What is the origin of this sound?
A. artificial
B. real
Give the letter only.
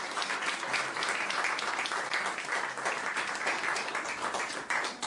B